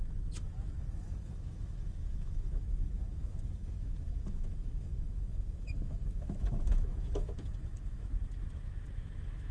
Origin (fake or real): fake